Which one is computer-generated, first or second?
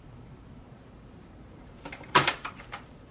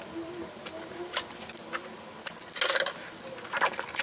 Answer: first